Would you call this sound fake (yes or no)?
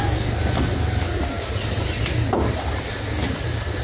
no